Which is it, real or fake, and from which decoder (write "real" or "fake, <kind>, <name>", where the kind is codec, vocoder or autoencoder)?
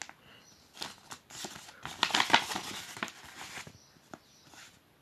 real